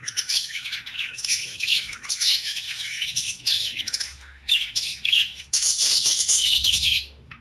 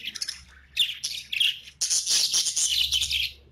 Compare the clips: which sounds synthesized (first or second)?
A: first